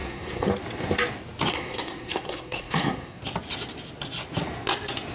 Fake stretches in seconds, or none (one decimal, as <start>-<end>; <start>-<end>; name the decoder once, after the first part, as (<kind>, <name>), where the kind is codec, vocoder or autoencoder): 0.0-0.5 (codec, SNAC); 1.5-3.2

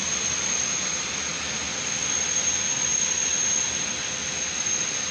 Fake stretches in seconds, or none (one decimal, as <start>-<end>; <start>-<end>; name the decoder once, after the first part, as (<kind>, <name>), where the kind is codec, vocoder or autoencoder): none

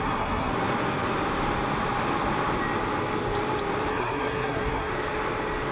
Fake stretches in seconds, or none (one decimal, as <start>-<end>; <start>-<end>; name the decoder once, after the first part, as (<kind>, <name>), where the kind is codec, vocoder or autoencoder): 0.0-0.5 (codec, SNAC); 3.9-4.9